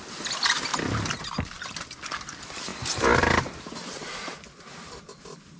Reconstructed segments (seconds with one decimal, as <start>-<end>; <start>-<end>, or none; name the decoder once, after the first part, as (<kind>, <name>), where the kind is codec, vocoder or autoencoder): none